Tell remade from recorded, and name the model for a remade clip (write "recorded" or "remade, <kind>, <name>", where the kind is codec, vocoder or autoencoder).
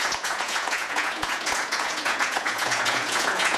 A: remade, vocoder, Vocos